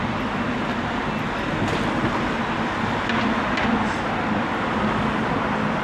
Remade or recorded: recorded